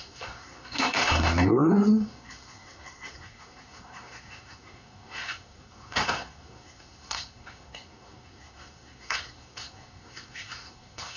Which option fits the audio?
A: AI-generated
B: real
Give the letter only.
A